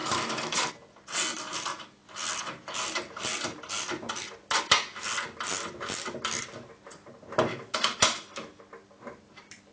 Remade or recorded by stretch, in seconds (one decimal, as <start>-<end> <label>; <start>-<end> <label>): 0.0-0.7 remade; 0.7-7.5 recorded; 7.5-8.6 remade; 8.6-9.7 recorded